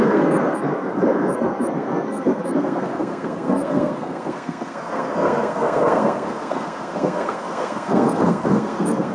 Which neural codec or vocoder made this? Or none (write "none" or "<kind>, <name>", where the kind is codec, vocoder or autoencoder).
codec, SNAC